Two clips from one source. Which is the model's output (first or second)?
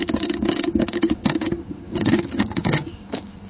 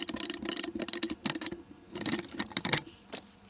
first